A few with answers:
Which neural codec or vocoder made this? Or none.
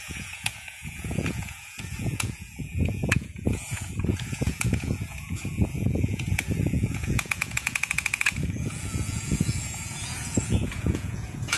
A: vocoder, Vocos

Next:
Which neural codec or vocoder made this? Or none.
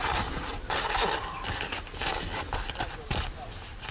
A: none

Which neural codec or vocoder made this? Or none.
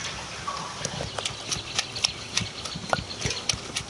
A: none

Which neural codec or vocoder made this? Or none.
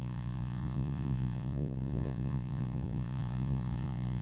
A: vocoder, Vocos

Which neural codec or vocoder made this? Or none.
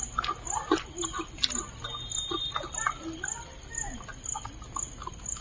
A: none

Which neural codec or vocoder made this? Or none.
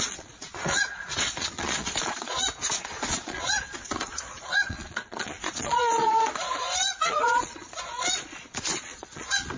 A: vocoder, Vocos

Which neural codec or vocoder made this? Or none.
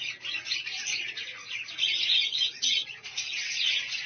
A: vocoder, Vocos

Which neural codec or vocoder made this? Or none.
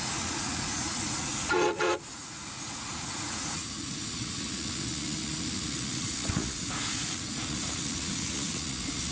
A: vocoder, Vocos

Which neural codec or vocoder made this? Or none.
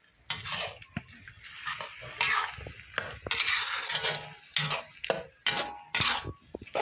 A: none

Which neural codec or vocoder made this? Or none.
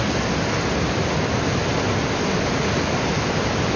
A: none